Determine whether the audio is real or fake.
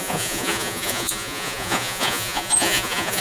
fake